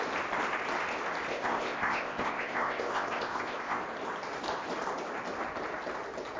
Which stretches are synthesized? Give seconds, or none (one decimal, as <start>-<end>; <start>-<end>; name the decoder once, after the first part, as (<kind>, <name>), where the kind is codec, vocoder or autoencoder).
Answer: 1.3-3.8 (codec, ZipCodec)